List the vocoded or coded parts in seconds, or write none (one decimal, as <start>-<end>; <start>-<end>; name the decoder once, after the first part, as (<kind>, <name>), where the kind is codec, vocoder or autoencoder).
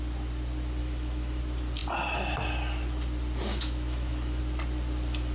0.8-1.4 (autoencoder, DAC-VAE); 3.5-4.4